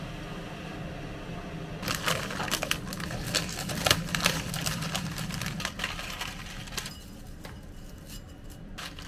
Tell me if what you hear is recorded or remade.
recorded